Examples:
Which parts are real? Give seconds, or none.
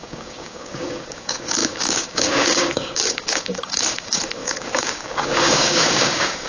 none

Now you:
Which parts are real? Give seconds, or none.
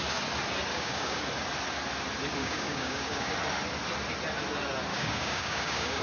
0.0-0.7; 1.2-2.4; 3.3-4.9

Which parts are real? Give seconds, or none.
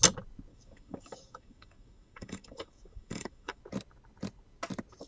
0.0-0.5; 3.6-5.1